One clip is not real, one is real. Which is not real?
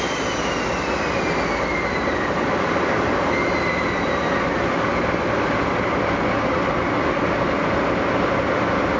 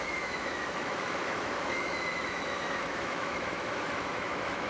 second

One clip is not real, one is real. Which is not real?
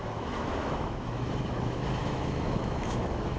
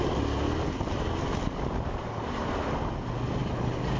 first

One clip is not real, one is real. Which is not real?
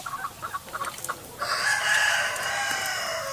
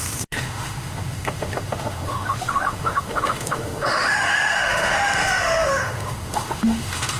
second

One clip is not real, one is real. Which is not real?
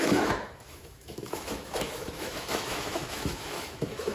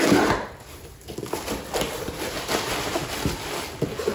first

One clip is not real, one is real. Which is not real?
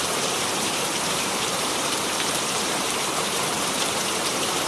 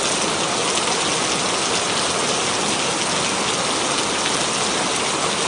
first